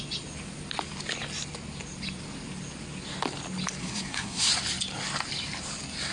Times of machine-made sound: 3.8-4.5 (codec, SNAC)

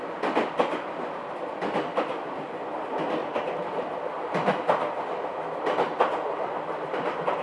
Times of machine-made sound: none

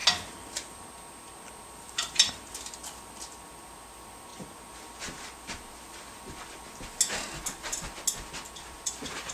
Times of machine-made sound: none